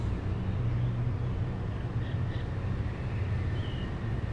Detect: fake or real real